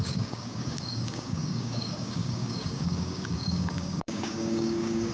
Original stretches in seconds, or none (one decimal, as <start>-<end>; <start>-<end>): none